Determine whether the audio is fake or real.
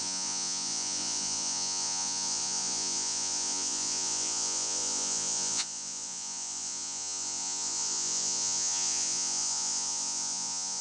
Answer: fake